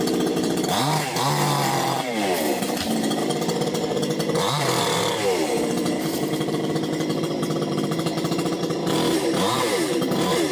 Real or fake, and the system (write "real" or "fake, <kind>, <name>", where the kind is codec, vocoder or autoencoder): fake, vocoder, BigVGAN v2